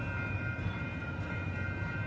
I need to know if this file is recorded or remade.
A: recorded